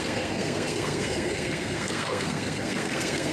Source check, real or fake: fake